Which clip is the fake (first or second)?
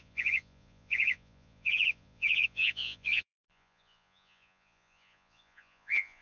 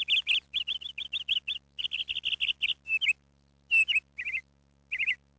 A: first